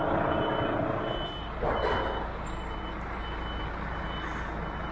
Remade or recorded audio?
recorded